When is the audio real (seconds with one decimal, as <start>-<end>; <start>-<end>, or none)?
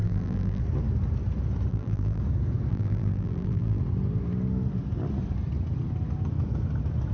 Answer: 0.6-1.7; 2.2-2.7; 3.8-7.1